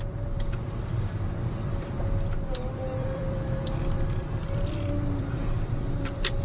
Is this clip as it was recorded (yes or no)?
no